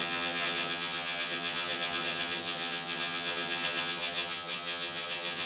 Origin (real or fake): fake